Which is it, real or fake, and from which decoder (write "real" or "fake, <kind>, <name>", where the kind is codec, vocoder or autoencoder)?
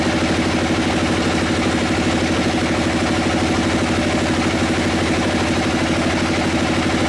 real